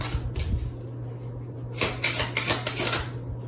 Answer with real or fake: real